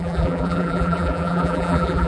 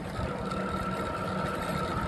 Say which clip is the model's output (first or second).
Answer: first